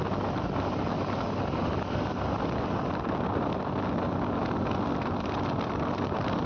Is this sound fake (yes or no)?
no